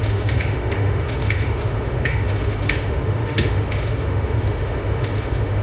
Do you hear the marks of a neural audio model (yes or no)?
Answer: yes